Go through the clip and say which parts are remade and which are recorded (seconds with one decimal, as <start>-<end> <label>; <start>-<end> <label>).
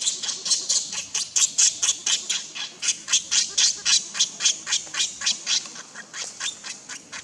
0.0-7.2 recorded